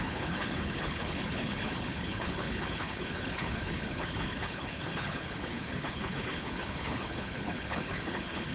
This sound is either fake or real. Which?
fake